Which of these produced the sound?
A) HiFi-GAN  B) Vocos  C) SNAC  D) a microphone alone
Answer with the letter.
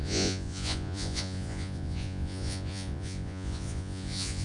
B